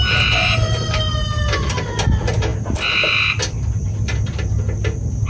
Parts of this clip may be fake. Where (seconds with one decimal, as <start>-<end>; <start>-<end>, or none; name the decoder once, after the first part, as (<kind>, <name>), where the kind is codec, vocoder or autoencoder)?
none